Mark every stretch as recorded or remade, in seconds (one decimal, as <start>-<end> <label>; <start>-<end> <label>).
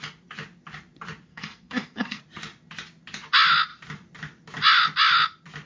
0.0-1.3 recorded; 1.3-2.2 remade; 2.2-5.7 recorded